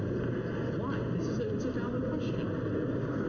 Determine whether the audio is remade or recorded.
recorded